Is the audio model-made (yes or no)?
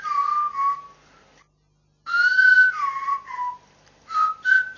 no